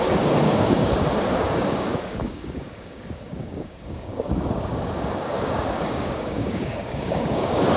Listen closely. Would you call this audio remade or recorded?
remade